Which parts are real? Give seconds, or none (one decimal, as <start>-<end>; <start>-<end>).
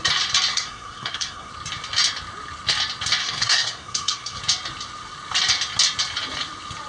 0.0-0.5; 1.5-3.2; 4.4-6.9